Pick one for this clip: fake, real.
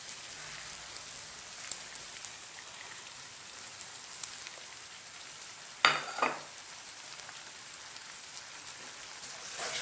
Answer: real